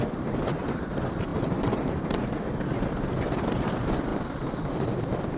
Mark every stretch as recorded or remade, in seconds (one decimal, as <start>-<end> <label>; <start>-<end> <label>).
0.0-5.4 remade